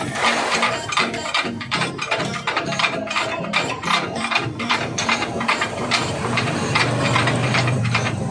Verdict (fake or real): fake